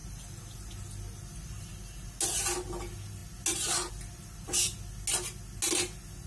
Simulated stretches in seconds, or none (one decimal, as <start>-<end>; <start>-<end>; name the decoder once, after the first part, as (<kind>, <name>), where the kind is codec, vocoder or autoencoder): none